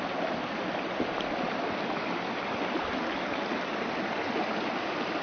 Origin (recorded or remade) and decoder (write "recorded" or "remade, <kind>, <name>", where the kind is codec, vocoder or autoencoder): recorded